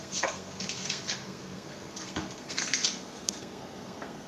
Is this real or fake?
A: fake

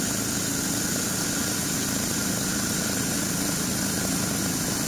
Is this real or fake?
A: real